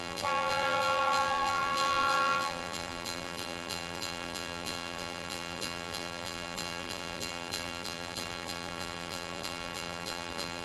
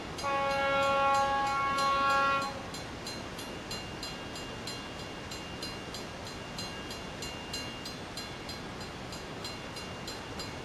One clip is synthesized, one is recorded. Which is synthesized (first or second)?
first